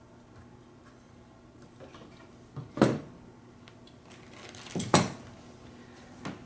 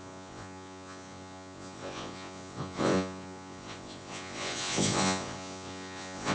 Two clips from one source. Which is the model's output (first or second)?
second